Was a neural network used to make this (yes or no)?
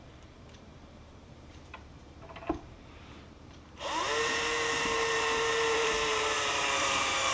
yes